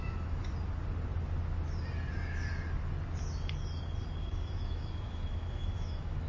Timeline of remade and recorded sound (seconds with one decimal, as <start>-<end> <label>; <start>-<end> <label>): 0.0-0.4 remade; 0.4-4.2 recorded; 4.2-6.3 remade